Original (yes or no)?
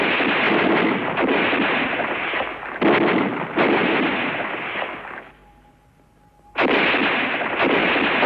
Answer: yes